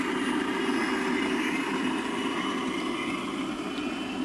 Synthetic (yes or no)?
no